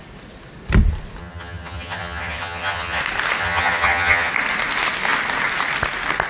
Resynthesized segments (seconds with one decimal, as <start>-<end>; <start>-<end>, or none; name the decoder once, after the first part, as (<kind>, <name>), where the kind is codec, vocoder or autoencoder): 1.2-3.0 (vocoder, HiFi-GAN); 3.4-4.3